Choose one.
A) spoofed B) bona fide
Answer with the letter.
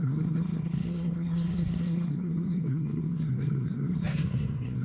A